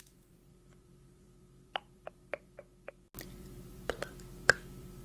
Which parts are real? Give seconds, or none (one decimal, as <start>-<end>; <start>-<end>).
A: none